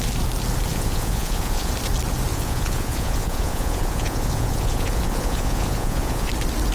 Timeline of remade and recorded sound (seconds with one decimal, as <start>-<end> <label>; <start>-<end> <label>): 0.0-0.7 recorded; 0.7-1.7 remade; 1.7-2.3 recorded; 2.3-6.3 remade; 6.3-6.7 recorded